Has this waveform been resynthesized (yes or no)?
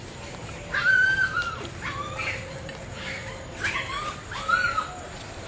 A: no